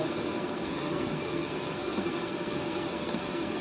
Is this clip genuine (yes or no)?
no